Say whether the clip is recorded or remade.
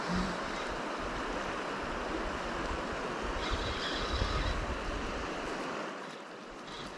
recorded